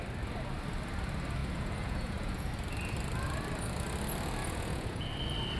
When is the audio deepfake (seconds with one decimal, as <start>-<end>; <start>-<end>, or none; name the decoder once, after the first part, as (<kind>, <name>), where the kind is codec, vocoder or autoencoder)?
1.4-2.5 (vocoder, Vocos); 4.4-5.1